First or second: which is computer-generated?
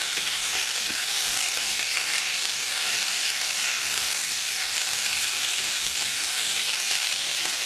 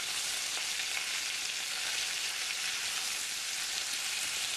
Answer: first